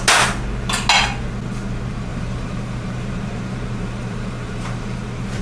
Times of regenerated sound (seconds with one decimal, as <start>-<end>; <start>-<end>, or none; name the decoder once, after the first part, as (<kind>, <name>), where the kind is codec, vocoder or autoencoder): 2.1-5.4 (vocoder, BigVGAN v2)